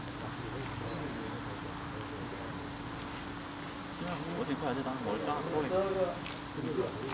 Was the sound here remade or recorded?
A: recorded